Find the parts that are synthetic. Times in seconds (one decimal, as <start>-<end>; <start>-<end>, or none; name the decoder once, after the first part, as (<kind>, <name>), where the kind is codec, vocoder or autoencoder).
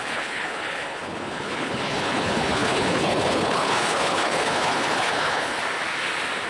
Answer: 0.0-5.6 (codec, HILCodec)